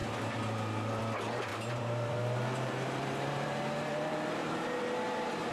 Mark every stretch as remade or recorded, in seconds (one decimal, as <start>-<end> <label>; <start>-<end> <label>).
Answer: 0.0-1.5 recorded; 1.5-4.8 remade; 4.8-5.5 recorded